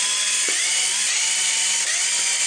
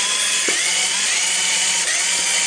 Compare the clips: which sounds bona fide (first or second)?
first